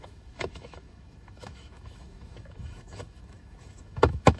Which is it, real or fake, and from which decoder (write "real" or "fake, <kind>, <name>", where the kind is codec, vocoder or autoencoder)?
fake, autoencoder, DAC-VAE